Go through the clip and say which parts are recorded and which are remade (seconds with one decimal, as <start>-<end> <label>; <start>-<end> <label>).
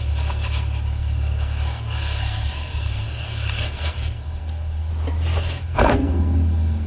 0.0-4.9 remade; 4.9-5.4 recorded; 5.4-6.9 remade